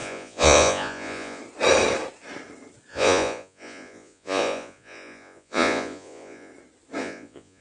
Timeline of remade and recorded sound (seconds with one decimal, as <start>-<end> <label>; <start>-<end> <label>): 0.0-1.4 remade; 1.4-2.9 recorded; 2.9-6.5 remade; 6.5-7.0 recorded; 7.0-7.6 remade